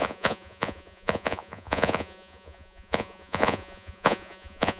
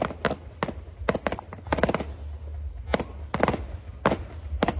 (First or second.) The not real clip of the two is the first